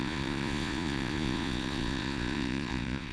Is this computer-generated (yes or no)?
yes